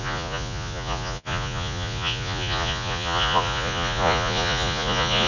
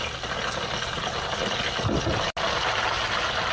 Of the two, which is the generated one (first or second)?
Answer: first